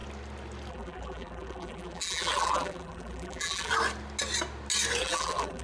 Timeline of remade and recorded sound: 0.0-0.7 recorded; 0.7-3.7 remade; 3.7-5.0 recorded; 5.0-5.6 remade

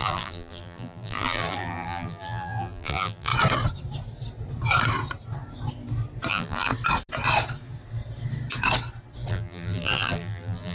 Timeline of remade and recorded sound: 0.0-3.3 remade; 3.3-6.3 recorded; 6.3-6.7 remade; 6.7-9.3 recorded; 9.3-10.7 remade

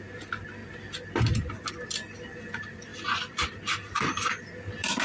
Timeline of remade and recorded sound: 0.0-2.9 recorded; 2.9-4.4 remade; 4.4-5.0 recorded

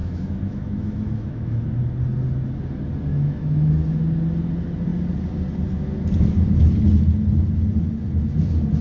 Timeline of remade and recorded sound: 0.0-1.8 remade; 1.8-3.1 recorded; 3.1-3.7 remade; 3.7-8.8 recorded

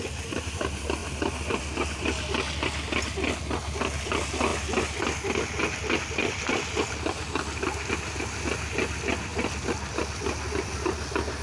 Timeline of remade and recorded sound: 0.0-9.3 recorded; 9.3-9.9 remade; 9.9-11.4 recorded

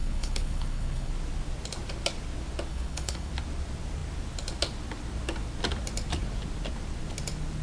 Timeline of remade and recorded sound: 0.0-1.1 remade; 1.1-2.7 recorded; 2.7-3.3 remade; 3.3-7.6 recorded

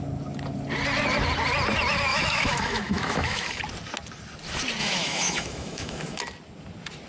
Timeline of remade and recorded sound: 0.0-2.1 recorded; 2.1-3.6 remade; 3.6-4.8 recorded; 4.8-6.2 remade; 6.2-7.1 recorded

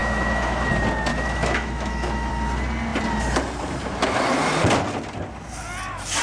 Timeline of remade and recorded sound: 0.0-0.7 remade; 0.7-1.1 recorded; 1.1-2.3 remade; 2.3-6.2 recorded